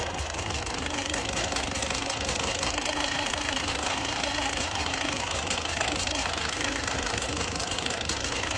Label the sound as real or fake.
fake